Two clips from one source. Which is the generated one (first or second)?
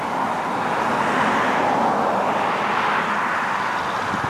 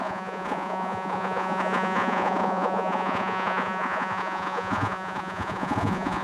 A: second